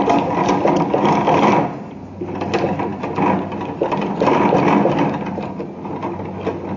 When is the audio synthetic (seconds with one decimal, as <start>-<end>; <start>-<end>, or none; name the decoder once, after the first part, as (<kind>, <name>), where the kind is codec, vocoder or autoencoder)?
none